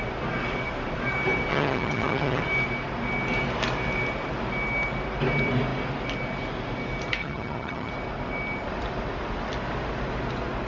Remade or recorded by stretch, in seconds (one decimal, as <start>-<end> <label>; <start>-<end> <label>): 0.0-1.5 recorded; 1.5-2.4 remade; 2.4-7.2 recorded; 7.2-7.9 remade; 7.9-10.7 recorded